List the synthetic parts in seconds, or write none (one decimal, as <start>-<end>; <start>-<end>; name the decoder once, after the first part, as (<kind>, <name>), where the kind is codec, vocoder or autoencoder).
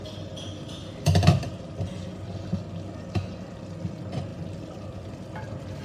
0.8-1.5 (vocoder, BigVGAN v2); 4.3-5.8